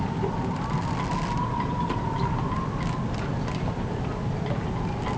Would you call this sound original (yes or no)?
yes